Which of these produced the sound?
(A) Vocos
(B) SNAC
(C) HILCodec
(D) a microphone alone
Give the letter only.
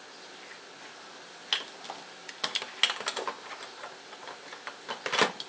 D